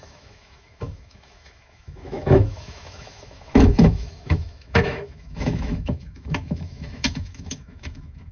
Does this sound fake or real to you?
fake